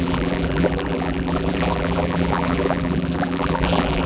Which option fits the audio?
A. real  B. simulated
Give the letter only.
B